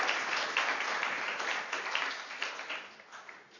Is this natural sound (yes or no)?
yes